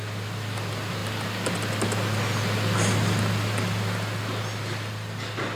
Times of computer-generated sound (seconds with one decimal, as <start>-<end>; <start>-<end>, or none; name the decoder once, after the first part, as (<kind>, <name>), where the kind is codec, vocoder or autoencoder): none